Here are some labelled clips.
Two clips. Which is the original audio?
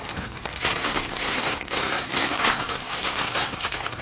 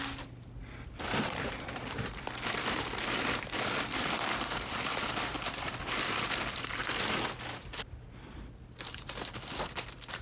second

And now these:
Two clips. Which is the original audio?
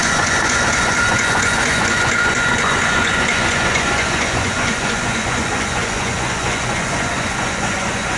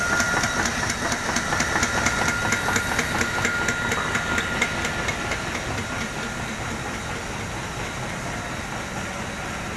second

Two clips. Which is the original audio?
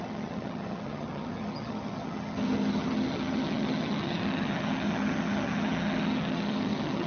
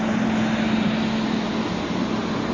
second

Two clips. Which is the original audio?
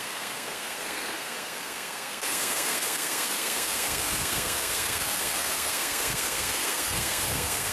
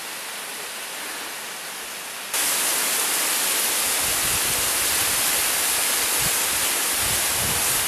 second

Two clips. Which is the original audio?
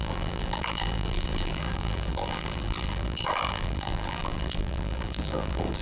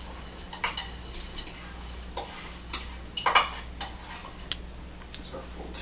second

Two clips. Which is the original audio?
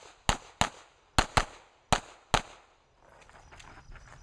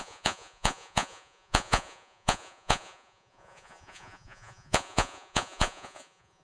first